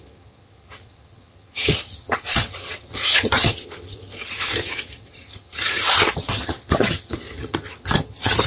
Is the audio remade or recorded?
remade